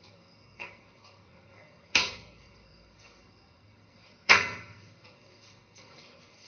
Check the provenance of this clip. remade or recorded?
remade